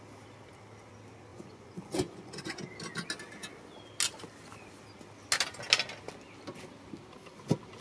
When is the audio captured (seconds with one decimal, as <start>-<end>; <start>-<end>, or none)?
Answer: 0.0-1.3; 2.7-7.8